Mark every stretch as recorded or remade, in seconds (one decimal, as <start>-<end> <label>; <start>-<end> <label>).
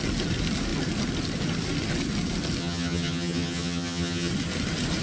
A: 0.0-2.6 recorded; 2.6-4.3 remade; 4.3-5.0 recorded